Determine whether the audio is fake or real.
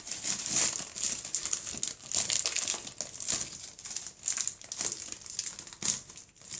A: real